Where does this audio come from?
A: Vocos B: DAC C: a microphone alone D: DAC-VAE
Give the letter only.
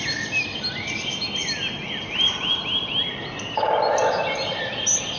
C